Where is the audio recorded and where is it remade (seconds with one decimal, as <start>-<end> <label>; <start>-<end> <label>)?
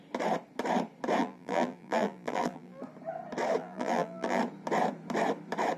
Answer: 0.0-1.2 recorded; 1.2-2.8 remade; 2.8-3.6 recorded; 3.6-4.4 remade; 4.4-5.8 recorded